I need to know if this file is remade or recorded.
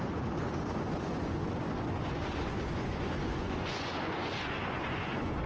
remade